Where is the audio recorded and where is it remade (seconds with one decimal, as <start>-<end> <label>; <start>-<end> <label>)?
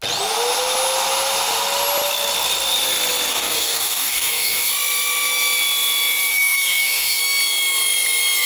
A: 0.0-3.3 recorded; 3.3-4.7 remade; 4.7-6.3 recorded; 6.3-7.2 remade; 7.2-8.5 recorded